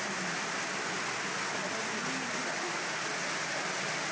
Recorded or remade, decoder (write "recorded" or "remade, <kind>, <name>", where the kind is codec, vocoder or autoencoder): recorded